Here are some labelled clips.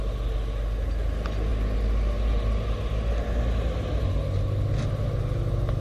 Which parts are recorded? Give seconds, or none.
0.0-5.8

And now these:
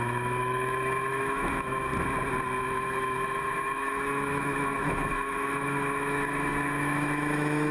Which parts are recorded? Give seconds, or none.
1.9-2.6